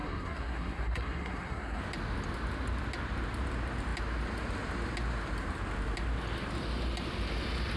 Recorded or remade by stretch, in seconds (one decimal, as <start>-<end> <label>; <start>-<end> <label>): 0.0-1.8 remade; 1.8-7.8 recorded